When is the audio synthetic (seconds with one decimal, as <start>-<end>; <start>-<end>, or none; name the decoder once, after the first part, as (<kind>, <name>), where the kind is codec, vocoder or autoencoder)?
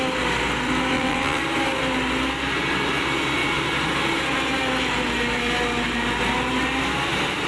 0.9-1.4 (vocoder, WaveNeXt)